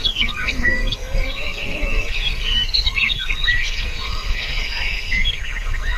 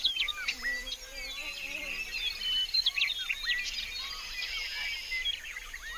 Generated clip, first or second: first